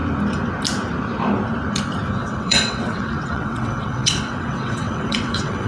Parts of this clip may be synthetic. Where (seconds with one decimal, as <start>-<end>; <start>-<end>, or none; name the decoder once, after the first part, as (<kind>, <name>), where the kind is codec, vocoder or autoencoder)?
2.2-5.7 (vocoder, WaveNeXt)